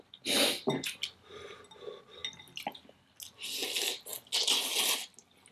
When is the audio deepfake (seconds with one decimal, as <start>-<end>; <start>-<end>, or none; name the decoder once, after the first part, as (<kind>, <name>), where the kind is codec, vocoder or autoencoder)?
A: none